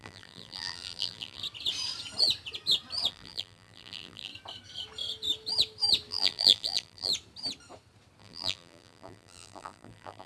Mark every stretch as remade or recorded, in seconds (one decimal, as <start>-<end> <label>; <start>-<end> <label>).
0.0-1.4 remade; 1.4-3.1 recorded; 3.1-4.3 remade; 4.3-6.1 recorded; 6.1-7.1 remade; 7.1-8.2 recorded; 8.2-10.3 remade